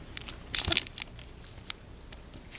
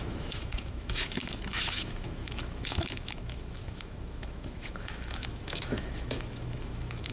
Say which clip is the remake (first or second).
second